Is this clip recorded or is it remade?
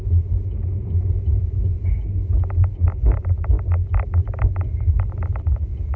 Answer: recorded